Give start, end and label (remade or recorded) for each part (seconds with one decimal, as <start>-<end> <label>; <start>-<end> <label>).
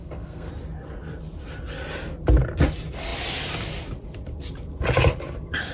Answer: 0.0-0.5 remade; 0.5-5.7 recorded